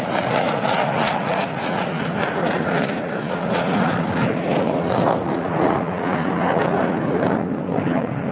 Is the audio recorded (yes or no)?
no